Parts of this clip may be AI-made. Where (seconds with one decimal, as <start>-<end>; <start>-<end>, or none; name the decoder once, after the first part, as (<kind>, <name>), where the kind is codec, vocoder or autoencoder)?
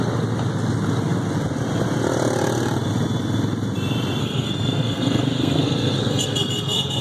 4.2-7.0 (codec, SNAC)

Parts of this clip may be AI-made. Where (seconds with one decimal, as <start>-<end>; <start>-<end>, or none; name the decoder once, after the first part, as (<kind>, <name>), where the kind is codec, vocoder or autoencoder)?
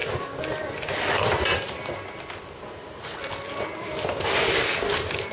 none